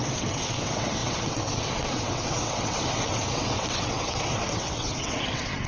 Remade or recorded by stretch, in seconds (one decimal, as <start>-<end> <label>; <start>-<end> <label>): 0.0-5.7 remade